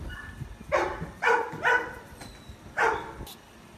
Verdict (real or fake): fake